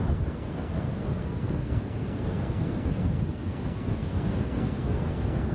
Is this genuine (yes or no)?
no